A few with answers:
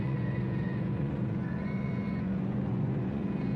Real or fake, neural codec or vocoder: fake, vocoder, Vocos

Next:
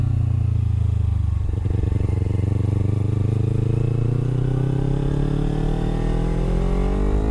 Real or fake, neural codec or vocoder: real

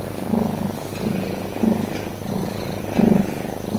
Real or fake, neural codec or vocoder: real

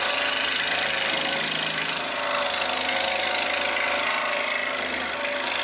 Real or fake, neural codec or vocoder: real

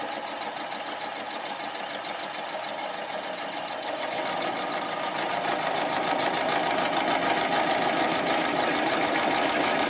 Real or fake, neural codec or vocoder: real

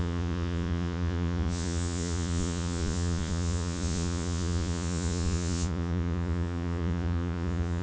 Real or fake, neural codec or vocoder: fake, vocoder, Vocos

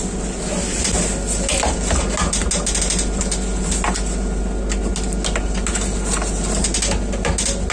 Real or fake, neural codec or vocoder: real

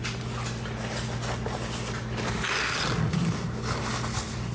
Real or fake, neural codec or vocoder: real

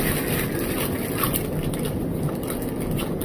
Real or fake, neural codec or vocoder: real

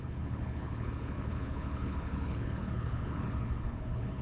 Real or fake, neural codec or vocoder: fake, codec, HILCodec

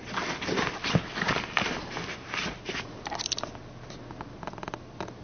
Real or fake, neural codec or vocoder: real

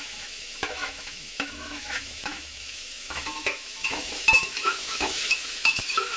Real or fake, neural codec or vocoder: fake, autoencoder, DAC-VAE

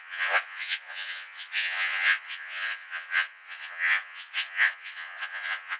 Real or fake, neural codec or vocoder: fake, vocoder, Vocos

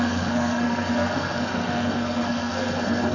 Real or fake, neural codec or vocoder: fake, codec, SNAC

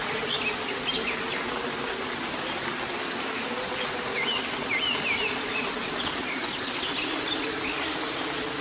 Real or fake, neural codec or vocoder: real